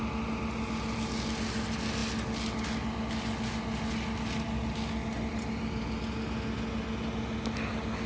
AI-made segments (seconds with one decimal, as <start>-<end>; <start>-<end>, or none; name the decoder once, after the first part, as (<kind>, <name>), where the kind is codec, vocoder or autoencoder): none